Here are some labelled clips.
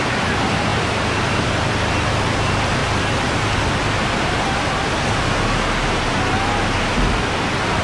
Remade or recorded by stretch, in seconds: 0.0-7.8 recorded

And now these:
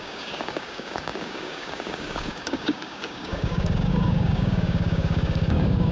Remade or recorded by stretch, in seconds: 0.0-5.9 remade